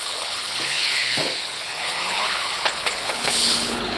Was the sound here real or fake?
fake